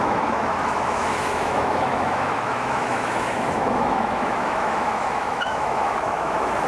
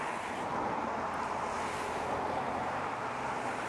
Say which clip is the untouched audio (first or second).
second